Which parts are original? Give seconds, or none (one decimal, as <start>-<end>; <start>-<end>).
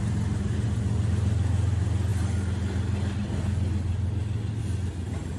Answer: 0.0-5.4